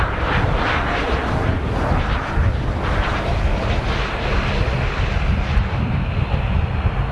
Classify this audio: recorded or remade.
recorded